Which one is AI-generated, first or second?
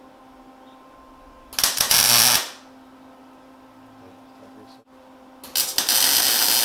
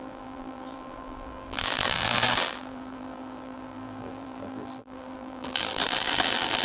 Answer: second